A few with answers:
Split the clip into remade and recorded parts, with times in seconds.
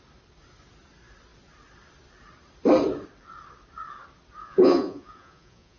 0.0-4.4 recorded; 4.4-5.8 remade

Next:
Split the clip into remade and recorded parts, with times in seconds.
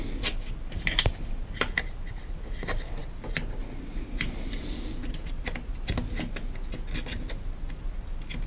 0.0-8.5 recorded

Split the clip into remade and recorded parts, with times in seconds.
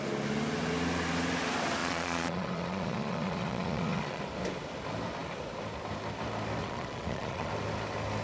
0.0-1.8 recorded; 1.8-4.2 remade; 4.2-6.6 recorded; 6.6-7.5 remade; 7.5-8.2 recorded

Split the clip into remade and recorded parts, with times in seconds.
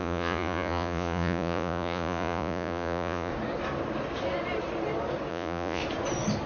0.0-3.3 remade; 3.3-5.3 recorded; 5.3-5.8 remade; 5.8-6.5 recorded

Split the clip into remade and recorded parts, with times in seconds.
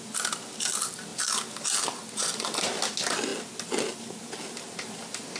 0.0-5.4 recorded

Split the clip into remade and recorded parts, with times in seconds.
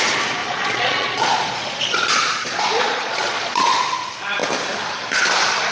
0.0-0.4 recorded; 0.4-3.8 remade; 3.8-5.7 recorded